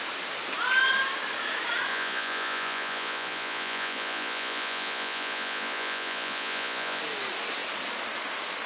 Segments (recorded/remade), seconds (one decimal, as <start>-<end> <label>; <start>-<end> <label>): 0.0-1.9 recorded; 1.9-7.0 remade; 7.0-8.7 recorded